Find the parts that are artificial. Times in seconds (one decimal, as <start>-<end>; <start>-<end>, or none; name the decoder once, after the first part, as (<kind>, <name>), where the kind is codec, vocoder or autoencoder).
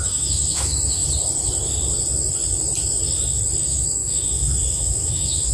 0.0-1.0 (autoencoder, DAC-VAE); 3.6-5.5